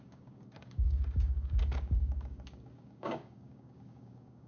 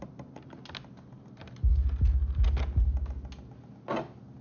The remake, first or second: first